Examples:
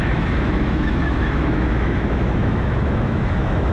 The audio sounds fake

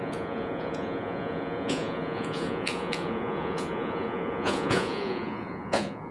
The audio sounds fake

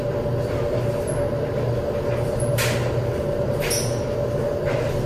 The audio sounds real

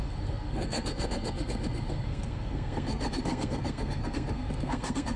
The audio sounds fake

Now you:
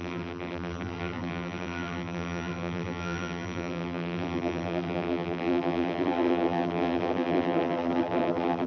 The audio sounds fake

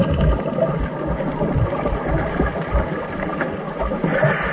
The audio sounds real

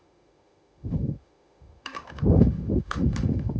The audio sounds fake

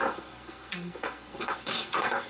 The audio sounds fake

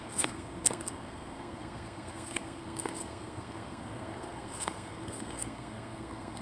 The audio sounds fake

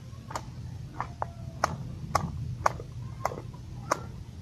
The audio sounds real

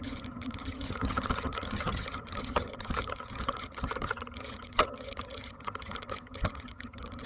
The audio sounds fake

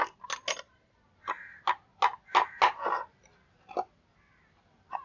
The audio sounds real